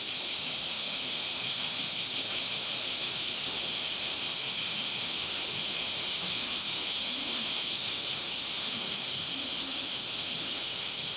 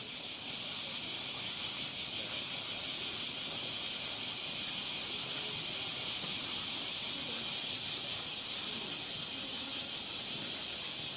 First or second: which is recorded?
second